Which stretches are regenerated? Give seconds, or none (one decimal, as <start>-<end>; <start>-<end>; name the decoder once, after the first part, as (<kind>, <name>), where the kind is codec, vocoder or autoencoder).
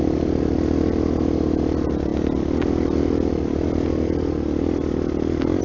none